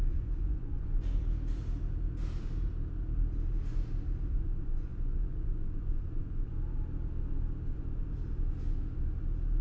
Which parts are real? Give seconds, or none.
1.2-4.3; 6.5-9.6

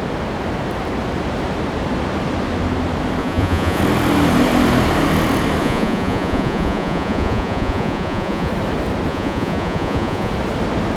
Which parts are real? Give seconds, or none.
0.0-3.2; 3.8-5.6; 8.5-9.1; 10.3-11.0

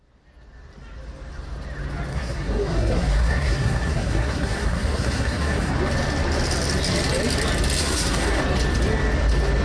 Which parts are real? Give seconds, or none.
0.0-2.1; 5.7-7.8; 8.4-9.6

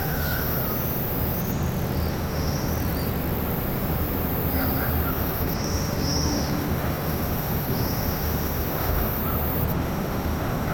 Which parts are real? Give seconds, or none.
0.6-2.1; 2.7-5.1; 9.2-9.7

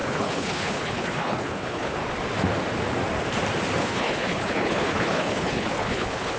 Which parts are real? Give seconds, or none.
2.0-3.8